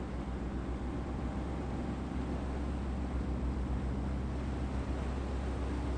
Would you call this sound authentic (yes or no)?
yes